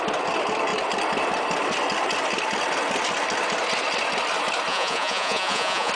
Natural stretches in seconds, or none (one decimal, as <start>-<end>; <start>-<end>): 0.0-4.7